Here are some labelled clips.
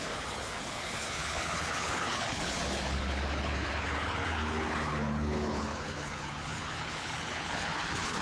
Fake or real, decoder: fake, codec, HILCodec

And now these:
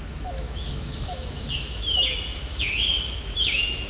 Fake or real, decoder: fake, autoencoder, DAC-VAE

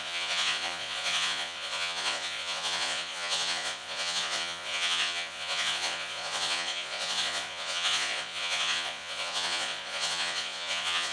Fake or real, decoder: fake, vocoder, Vocos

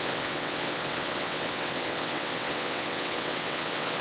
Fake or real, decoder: fake, vocoder, WaveNeXt